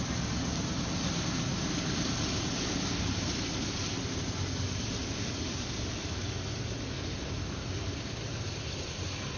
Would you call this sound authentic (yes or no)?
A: yes